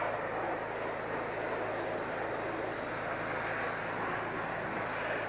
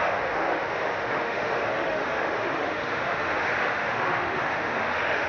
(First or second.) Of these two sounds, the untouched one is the first